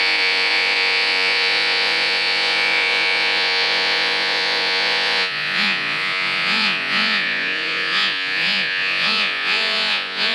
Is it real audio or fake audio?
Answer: fake